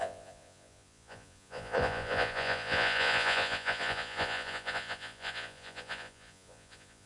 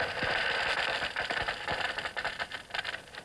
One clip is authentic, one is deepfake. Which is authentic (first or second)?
second